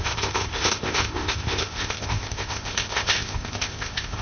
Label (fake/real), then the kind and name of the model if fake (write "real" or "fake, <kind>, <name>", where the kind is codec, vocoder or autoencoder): fake, codec, ZipCodec